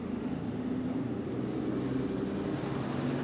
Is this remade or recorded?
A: recorded